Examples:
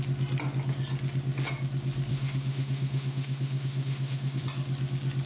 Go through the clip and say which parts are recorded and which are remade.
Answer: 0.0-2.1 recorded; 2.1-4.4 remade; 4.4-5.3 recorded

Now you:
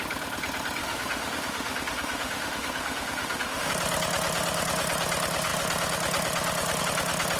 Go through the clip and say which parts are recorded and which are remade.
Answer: 0.0-0.8 recorded; 0.8-3.7 remade; 3.7-7.4 recorded

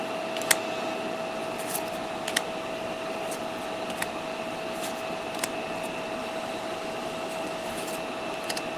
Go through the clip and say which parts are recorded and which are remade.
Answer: 0.0-6.2 recorded; 6.2-7.7 remade; 7.7-8.8 recorded

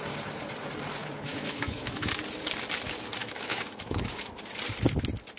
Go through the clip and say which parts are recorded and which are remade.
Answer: 0.0-1.3 recorded; 1.3-2.1 remade; 2.1-3.2 recorded; 3.2-4.3 remade; 4.3-5.4 recorded

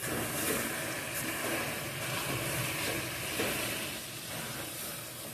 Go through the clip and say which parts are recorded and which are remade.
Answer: 0.0-5.3 recorded

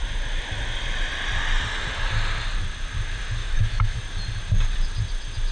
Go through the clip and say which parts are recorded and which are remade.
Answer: 0.0-3.4 recorded; 3.4-4.0 remade; 4.0-5.5 recorded